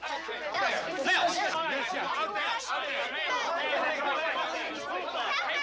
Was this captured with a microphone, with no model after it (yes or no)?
yes